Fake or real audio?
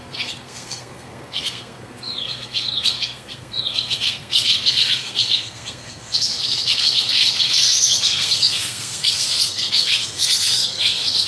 fake